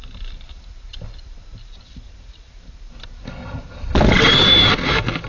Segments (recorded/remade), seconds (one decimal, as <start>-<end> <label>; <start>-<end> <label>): 0.0-5.3 recorded